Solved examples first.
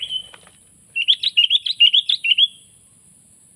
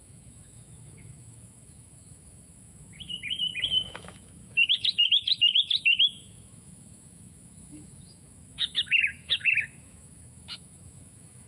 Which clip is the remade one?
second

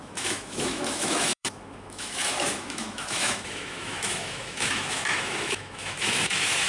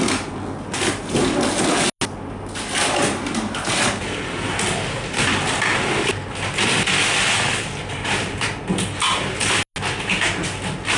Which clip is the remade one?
first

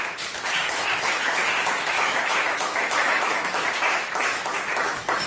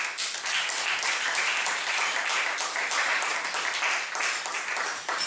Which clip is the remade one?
first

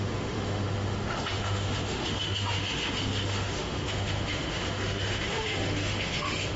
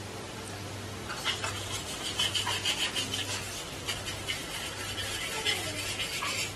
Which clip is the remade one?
first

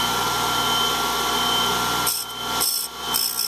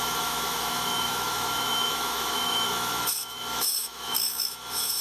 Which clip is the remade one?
second